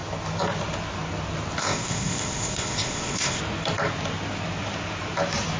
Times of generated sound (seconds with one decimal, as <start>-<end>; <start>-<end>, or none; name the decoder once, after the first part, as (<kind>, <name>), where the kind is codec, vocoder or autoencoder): 1.6-3.4 (codec, ZipCodec)